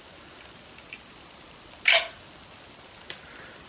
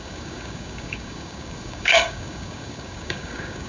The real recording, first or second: first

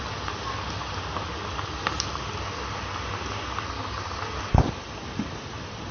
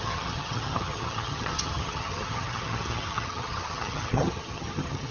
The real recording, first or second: first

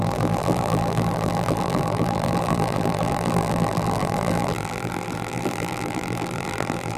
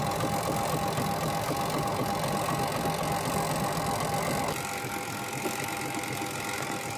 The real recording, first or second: second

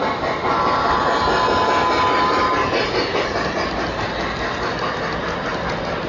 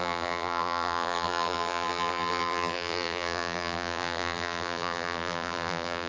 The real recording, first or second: first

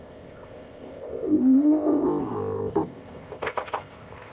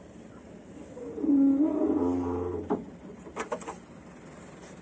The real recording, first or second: second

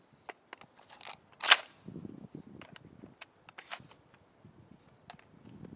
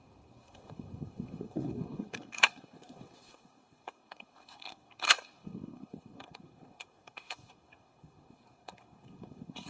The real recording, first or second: first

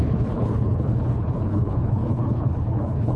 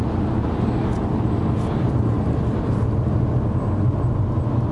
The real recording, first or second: second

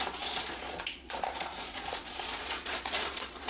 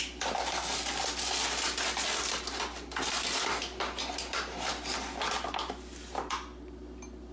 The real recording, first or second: second